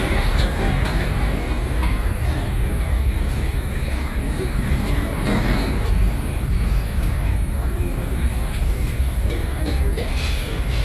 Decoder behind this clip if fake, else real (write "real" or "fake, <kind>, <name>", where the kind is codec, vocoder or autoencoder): fake, codec, DAC